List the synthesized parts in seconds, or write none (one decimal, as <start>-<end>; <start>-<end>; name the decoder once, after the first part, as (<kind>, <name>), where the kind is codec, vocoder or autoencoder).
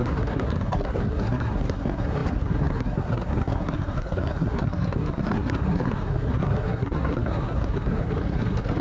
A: 0.0-8.8 (codec, SNAC)